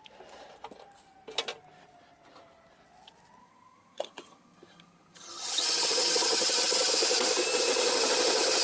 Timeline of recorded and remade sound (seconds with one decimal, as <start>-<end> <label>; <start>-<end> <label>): 0.0-3.4 recorded; 3.4-6.9 remade; 6.9-8.6 recorded